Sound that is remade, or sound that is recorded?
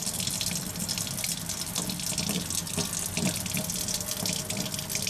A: recorded